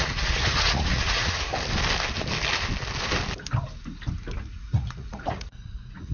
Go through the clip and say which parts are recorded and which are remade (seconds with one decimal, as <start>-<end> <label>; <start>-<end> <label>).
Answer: 0.0-1.5 remade; 1.5-4.4 recorded; 4.4-6.1 remade